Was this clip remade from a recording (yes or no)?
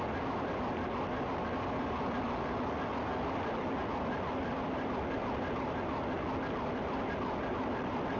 no